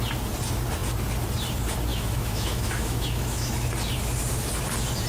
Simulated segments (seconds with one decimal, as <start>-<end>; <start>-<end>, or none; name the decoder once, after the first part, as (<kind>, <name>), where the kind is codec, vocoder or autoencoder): 1.9-3.7 (autoencoder, DAC-VAE)

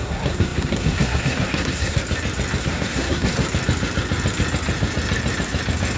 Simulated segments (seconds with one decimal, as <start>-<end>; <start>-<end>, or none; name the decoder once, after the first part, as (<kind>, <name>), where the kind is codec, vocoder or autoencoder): 0.0-2.0 (codec, SNAC); 2.6-3.4